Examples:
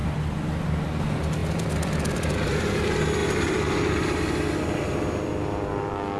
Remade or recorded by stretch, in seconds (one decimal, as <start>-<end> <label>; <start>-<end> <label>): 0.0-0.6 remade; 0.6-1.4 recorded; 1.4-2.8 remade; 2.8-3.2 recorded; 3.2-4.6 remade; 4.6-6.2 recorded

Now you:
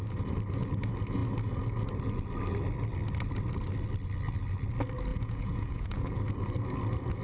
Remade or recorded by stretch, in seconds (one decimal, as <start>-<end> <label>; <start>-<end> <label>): 0.0-5.1 recorded; 5.1-6.2 remade; 6.2-7.2 recorded

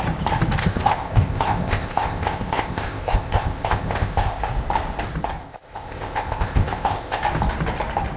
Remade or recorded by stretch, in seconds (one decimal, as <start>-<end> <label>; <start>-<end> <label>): 0.0-0.6 recorded; 0.6-4.4 remade; 4.4-5.4 recorded; 5.4-7.2 remade; 7.2-8.2 recorded

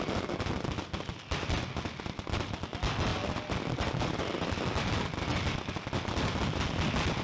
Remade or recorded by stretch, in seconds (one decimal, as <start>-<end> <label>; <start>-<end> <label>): 0.0-7.2 recorded

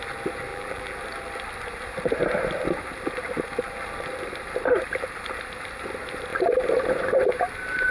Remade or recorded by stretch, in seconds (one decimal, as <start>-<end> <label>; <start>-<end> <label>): 0.0-0.5 recorded; 0.5-1.0 remade; 1.0-7.9 recorded